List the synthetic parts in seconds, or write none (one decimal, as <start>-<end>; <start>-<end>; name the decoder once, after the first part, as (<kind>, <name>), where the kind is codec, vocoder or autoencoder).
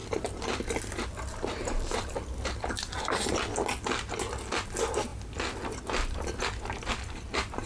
none